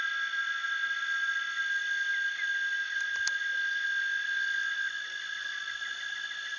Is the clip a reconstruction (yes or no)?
no